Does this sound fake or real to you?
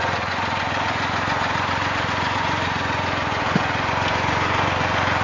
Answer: fake